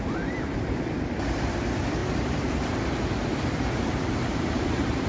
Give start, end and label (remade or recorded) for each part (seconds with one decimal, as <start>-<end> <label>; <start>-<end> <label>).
0.0-2.0 recorded; 2.0-5.1 remade